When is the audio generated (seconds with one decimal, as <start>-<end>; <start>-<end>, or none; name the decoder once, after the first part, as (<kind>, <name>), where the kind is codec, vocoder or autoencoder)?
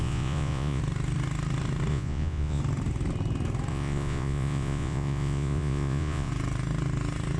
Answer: 0.0-0.8 (vocoder, Vocos); 1.9-2.6; 3.7-6.3